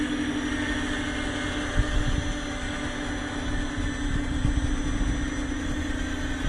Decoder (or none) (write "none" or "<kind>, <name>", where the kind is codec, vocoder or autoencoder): none